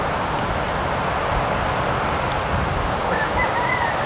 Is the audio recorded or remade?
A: recorded